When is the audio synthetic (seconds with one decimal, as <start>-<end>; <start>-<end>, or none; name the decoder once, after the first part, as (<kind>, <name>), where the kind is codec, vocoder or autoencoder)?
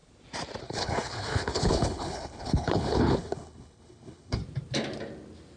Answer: 0.6-4.4 (codec, HILCodec)